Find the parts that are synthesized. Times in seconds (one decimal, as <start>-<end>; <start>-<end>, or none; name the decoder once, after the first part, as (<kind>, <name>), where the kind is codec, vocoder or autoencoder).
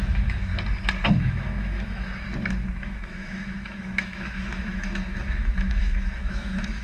0.0-0.5 (autoencoder, DAC-VAE); 1.1-2.1; 2.7-6.8